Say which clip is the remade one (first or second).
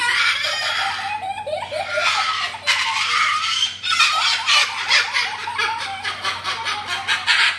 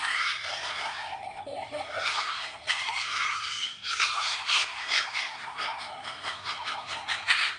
second